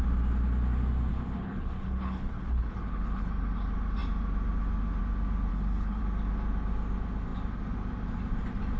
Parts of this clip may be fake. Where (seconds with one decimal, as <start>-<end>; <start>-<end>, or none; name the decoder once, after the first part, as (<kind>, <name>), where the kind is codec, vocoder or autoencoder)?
1.1-3.3 (codec, HILCodec); 5.5-6.0